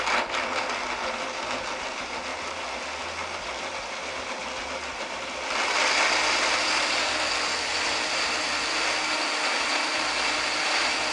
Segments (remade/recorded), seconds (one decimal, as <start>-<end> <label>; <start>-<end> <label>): 0.0-11.1 recorded